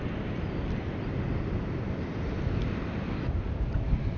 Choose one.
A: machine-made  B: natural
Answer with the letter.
B